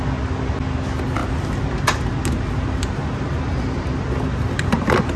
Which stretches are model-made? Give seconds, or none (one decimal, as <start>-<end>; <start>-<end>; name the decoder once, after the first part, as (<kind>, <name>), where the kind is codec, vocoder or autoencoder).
none